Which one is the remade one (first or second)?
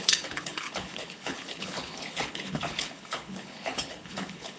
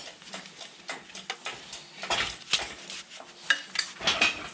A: first